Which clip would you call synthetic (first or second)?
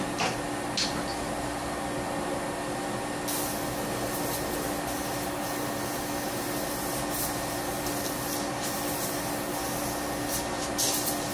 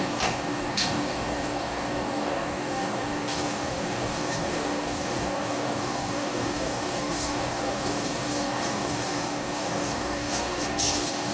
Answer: second